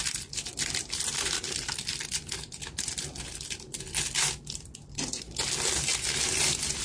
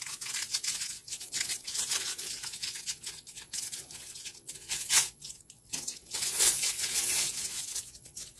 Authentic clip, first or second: first